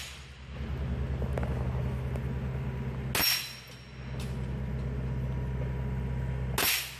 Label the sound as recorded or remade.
recorded